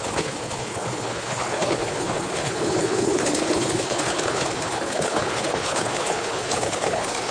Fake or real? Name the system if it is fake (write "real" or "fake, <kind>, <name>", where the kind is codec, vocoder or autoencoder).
fake, codec, HILCodec